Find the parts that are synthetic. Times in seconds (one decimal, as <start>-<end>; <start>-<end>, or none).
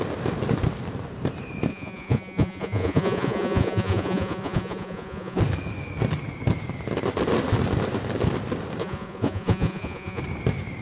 1.7-5.4; 8.8-10.2